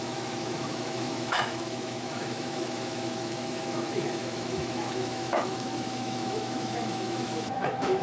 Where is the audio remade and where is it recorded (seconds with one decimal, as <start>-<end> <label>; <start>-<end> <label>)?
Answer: 0.0-8.0 remade